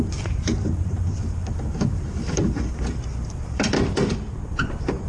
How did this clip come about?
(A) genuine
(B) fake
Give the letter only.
B